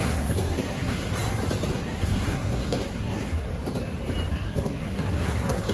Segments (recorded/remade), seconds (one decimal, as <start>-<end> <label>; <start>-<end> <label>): 0.0-1.1 remade; 1.1-1.7 recorded; 1.7-3.5 remade; 3.5-4.3 recorded; 4.3-5.7 remade